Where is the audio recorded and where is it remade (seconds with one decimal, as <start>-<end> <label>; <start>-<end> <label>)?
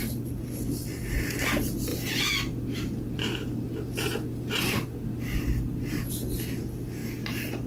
0.0-7.7 recorded